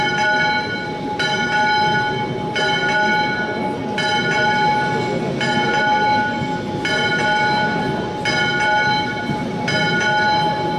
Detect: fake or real real